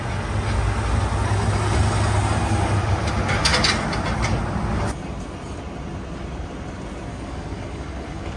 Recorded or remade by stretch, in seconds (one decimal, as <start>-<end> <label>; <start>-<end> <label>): 0.0-7.1 recorded; 7.1-8.4 remade

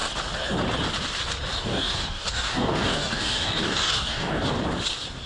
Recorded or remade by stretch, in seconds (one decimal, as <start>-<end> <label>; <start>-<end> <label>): 0.0-1.5 recorded; 1.5-4.5 remade; 4.5-5.3 recorded

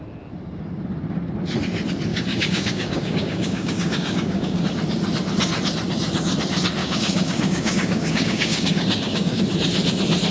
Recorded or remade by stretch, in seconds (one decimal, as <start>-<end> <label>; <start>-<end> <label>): 0.0-2.1 recorded; 2.1-4.6 remade; 4.6-6.8 recorded; 6.8-9.4 remade; 9.4-10.3 recorded

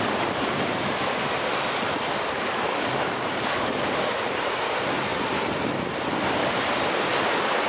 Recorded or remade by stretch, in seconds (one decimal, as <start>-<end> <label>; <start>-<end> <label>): 0.0-7.7 recorded